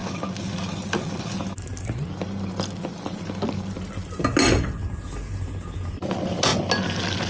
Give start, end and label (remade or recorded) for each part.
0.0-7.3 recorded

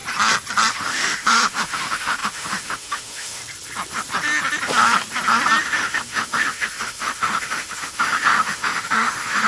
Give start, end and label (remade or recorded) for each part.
0.0-0.7 recorded; 0.7-3.4 remade; 3.4-5.6 recorded; 5.6-9.5 remade

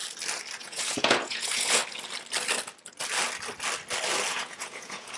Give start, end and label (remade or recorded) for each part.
0.0-0.6 recorded; 0.6-1.8 remade; 1.8-4.3 recorded; 4.3-5.2 remade